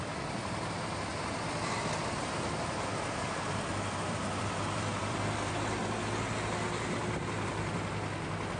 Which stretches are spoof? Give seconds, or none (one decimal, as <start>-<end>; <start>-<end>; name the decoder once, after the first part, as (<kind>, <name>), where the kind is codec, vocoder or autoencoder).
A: 1.1-5.8 (vocoder, BigVGAN v2)